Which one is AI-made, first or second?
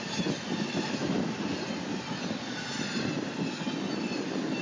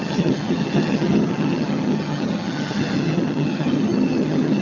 second